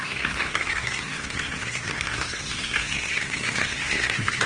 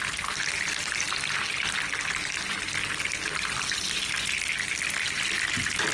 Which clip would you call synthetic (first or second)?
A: first